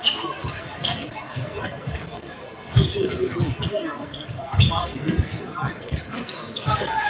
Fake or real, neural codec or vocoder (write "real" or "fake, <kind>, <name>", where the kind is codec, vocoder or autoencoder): fake, codec, SNAC